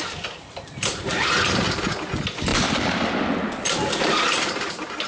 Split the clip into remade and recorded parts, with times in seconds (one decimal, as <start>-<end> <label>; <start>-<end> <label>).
0.0-5.1 recorded